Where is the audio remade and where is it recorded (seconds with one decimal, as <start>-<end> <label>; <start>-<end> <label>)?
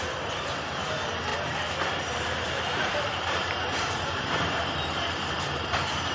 0.0-1.3 remade; 1.3-2.0 recorded; 2.0-6.1 remade